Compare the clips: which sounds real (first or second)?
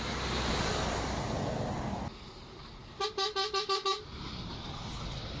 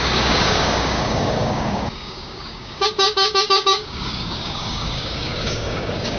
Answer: first